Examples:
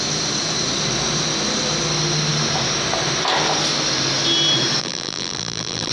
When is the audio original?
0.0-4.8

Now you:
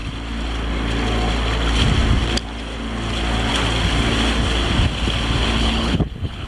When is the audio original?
0.0-5.6

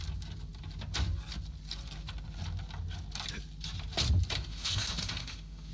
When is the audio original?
0.0-4.5

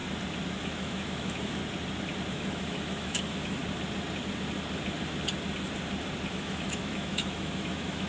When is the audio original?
0.0-0.6; 1.6-2.3; 3.6-6.3

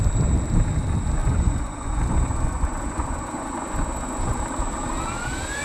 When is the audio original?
0.0-1.2; 4.4-5.6

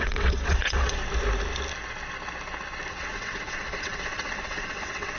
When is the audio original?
1.0-2.9

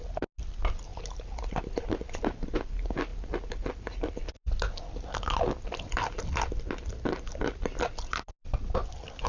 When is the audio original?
0.0-9.3

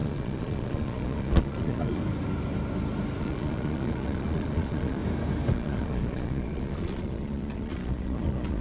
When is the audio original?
2.0-3.2; 5.0-5.5